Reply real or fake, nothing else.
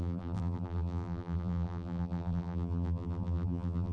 fake